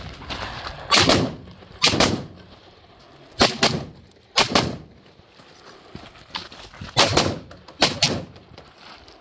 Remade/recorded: recorded